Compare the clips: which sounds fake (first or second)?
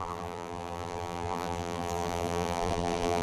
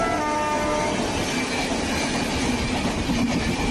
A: first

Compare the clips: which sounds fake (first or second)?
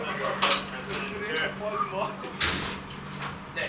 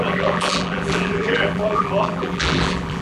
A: second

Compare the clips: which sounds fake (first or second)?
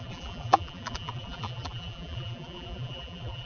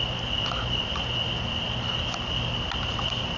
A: first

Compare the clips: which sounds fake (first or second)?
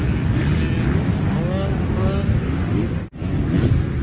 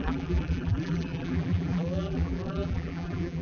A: second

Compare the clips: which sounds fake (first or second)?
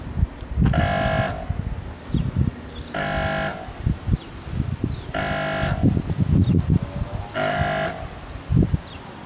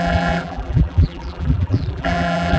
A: second